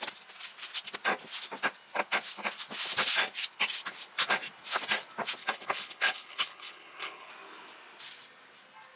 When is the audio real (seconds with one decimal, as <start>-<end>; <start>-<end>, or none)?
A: 0.0-5.4; 7.3-9.0